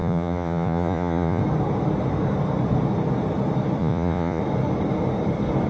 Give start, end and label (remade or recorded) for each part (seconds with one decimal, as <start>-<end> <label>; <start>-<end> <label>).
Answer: 0.0-1.4 remade; 1.4-3.8 recorded; 3.8-4.4 remade; 4.4-5.7 recorded